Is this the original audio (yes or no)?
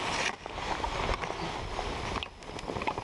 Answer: yes